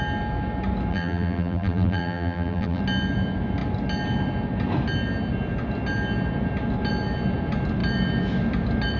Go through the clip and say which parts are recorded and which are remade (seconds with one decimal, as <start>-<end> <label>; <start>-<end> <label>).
0.0-0.9 recorded; 0.9-2.8 remade; 2.8-9.0 recorded